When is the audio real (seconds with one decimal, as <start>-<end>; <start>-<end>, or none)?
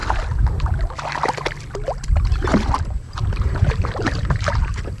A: 0.0-2.5